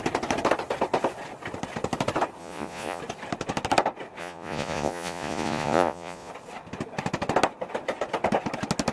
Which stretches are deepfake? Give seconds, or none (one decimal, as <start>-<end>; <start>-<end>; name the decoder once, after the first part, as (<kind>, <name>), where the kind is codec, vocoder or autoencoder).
2.4-3.0 (vocoder, Vocos); 4.2-6.3